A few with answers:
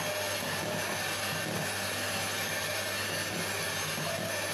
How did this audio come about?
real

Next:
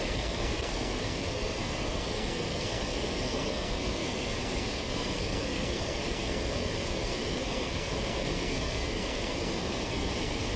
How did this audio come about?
fake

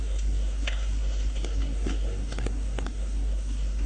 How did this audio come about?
fake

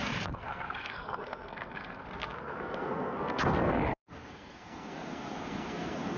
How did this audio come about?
fake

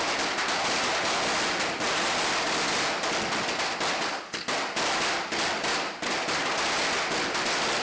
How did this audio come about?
real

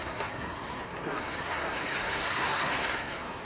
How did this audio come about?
fake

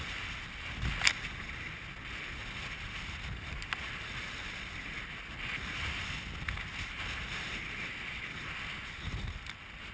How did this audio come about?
real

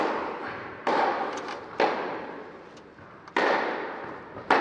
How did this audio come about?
real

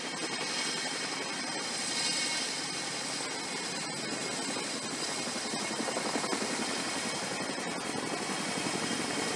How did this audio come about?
real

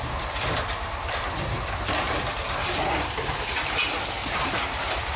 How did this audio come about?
real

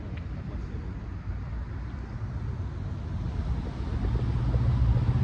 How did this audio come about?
real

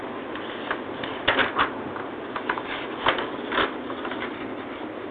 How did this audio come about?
real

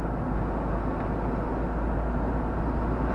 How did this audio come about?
real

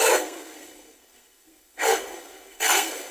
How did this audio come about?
fake